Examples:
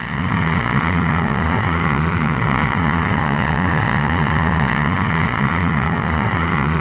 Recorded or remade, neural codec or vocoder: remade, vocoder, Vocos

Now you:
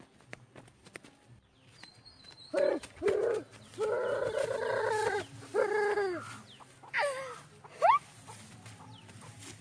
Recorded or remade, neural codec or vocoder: recorded